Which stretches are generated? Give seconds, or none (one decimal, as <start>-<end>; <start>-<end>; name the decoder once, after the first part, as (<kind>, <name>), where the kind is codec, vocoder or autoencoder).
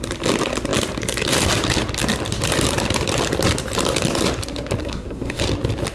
4.8-5.4 (codec, SNAC)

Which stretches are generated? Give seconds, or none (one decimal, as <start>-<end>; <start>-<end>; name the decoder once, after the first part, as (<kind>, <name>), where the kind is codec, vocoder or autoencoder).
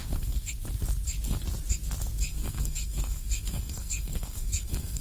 0.0-0.5 (codec, SNAC); 2.3-5.0